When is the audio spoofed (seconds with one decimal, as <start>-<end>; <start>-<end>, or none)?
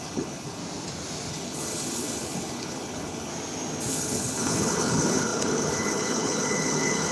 0.0-0.6; 1.3-3.3; 3.9-7.1